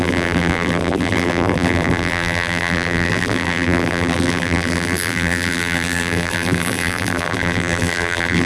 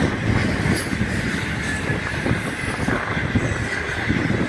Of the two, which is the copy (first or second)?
first